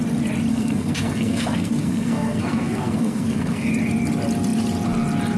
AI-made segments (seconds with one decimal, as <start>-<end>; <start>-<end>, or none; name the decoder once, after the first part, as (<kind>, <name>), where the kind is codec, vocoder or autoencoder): 0.5-3.7 (codec, SNAC)